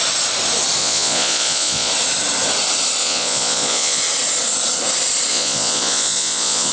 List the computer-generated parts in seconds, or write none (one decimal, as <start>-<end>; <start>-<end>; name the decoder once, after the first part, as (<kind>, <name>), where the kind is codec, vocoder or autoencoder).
0.8-1.9 (vocoder, Vocos); 3.0-4.0; 5.3-6.7